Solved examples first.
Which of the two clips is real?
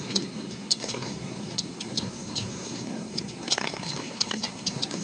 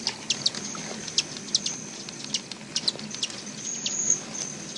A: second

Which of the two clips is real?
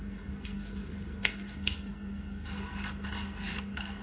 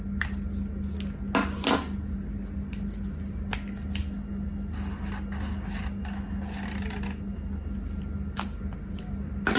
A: second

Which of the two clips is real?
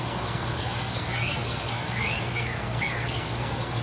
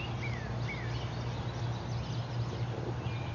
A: second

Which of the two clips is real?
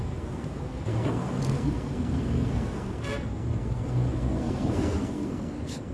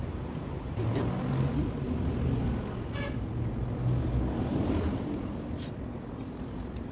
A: second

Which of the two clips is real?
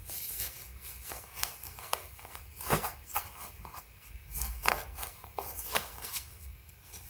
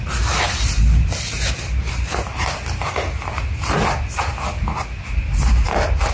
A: second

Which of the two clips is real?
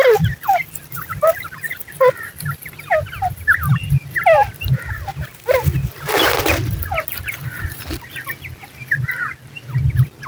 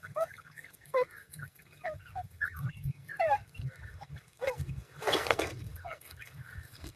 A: first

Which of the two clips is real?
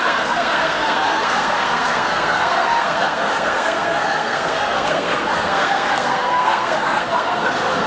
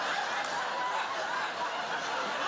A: second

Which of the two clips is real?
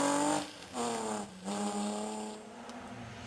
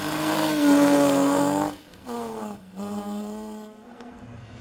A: first